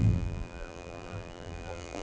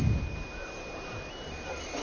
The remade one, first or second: first